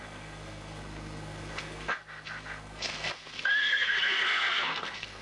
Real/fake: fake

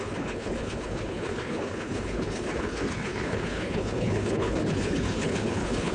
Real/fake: fake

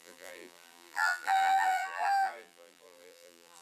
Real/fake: fake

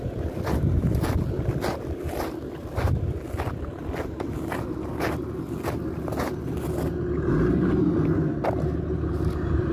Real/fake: real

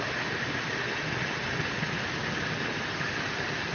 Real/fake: real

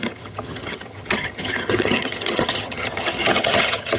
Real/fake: fake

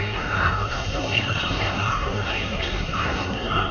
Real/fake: fake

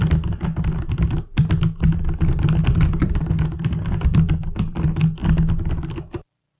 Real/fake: real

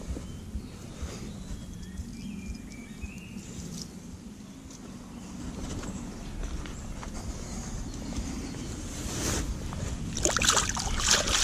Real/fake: real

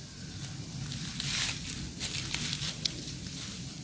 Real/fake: real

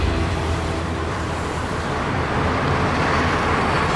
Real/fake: fake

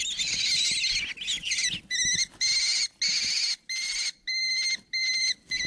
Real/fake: real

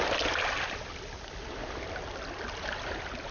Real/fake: real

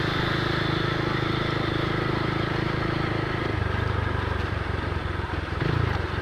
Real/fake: real